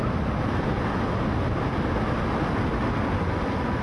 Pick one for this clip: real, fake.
real